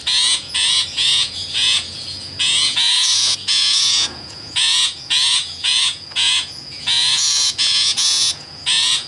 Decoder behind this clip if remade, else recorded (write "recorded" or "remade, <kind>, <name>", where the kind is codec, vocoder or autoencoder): remade, vocoder, Vocos